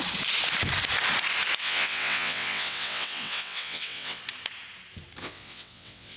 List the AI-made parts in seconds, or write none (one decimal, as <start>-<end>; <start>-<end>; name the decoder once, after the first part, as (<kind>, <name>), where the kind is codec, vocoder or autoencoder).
1.6-4.2 (vocoder, WaveNeXt); 5.2-6.2